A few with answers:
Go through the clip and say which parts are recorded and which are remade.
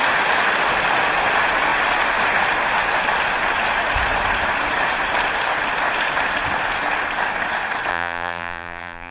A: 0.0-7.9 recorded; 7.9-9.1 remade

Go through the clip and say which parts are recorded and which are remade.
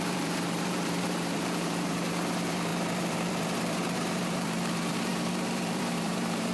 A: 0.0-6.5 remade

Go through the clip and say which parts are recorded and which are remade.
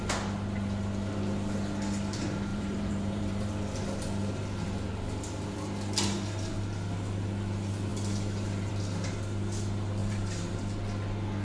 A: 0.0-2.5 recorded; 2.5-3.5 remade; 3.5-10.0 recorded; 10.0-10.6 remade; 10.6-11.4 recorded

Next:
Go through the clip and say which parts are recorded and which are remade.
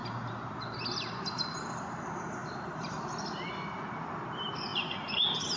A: 0.0-0.6 remade; 0.6-2.4 recorded; 2.4-3.2 remade; 3.2-5.6 recorded